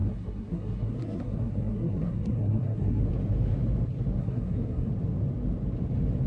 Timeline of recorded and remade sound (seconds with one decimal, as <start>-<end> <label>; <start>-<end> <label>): 0.0-3.0 remade; 3.0-4.2 recorded; 4.2-4.9 remade; 4.9-6.3 recorded